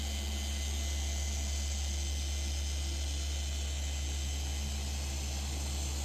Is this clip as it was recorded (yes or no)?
yes